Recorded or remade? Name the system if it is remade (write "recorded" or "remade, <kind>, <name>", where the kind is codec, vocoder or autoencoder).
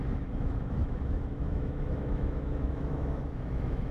remade, autoencoder, DAC-VAE